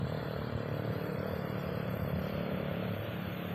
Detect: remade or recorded remade